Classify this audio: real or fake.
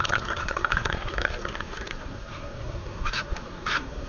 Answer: fake